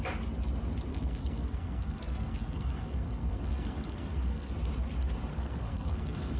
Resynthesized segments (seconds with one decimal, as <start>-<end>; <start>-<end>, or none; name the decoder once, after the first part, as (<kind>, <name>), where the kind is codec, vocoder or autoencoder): 0.9-4.5 (codec, SNAC); 5.3-6.4